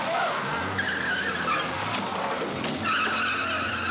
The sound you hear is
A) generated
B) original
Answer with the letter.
B